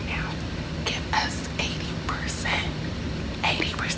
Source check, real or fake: real